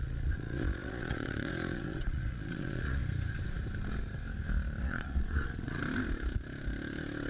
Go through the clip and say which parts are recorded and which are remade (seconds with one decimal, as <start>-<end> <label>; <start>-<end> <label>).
0.0-3.0 remade; 3.0-4.8 recorded; 4.8-5.8 remade; 5.8-7.3 recorded